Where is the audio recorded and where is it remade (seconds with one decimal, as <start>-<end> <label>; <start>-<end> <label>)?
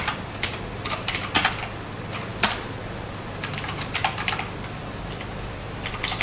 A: 0.0-2.3 recorded; 2.3-2.8 remade; 2.8-3.5 recorded; 3.5-4.8 remade; 4.8-6.2 recorded